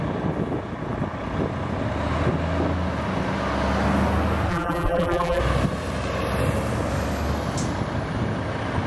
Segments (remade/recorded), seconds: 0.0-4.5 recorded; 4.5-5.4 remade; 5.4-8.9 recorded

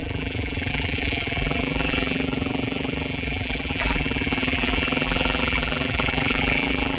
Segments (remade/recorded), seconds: 0.0-7.0 remade

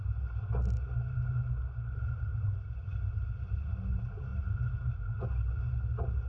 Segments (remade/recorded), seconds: 0.0-2.3 recorded; 2.3-3.1 remade; 3.1-6.3 recorded

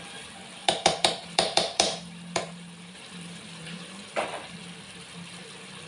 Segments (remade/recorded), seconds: 0.0-0.6 recorded; 0.6-4.1 remade; 4.1-5.9 recorded

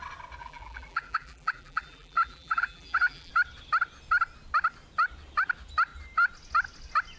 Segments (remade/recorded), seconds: 0.0-0.4 recorded; 0.4-3.3 remade; 3.3-7.2 recorded

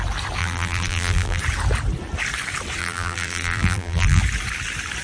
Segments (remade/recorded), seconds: 0.0-0.4 recorded; 0.4-1.4 remade; 1.4-2.8 recorded; 2.8-4.2 remade; 4.2-5.0 recorded